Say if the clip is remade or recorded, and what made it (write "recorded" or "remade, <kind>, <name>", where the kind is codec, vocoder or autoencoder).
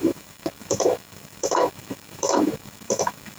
remade, autoencoder, DAC-VAE